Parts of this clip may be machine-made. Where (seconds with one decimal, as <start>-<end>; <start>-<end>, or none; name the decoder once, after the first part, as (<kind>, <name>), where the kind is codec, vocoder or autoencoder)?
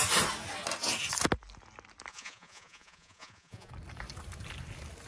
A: 2.1-3.7 (vocoder, Vocos)